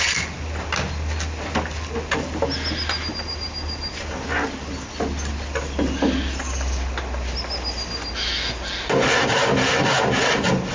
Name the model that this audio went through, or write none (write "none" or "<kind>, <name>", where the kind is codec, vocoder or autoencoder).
none